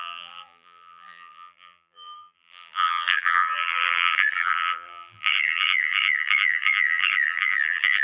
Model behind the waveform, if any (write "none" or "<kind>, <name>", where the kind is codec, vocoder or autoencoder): vocoder, BigVGAN v2